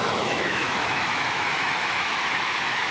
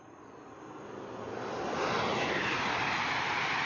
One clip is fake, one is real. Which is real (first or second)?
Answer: second